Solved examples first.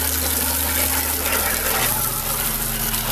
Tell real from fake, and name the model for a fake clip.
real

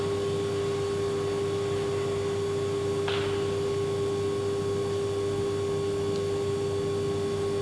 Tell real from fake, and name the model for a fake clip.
real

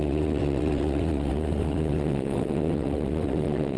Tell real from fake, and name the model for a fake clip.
fake, vocoder, WaveNeXt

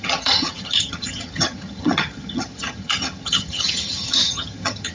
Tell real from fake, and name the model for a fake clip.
fake, vocoder, HiFi-GAN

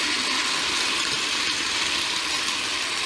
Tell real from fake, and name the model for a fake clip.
real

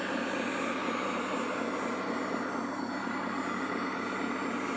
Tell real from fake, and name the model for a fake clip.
real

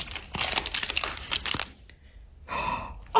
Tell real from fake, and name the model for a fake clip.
real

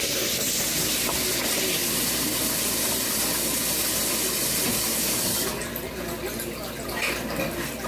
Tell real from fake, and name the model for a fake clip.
real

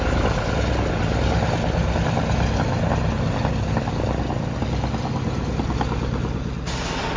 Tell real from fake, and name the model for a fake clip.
real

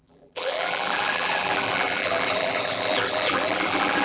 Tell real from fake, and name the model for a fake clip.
fake, vocoder, BigVGAN v2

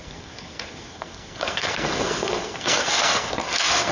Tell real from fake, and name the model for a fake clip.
fake, codec, SNAC